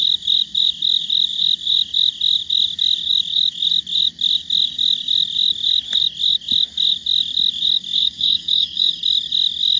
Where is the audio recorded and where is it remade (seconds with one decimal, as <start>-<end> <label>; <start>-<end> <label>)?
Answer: 0.0-7.9 recorded; 7.9-8.9 remade; 8.9-9.8 recorded